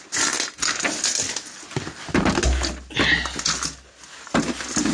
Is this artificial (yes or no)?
no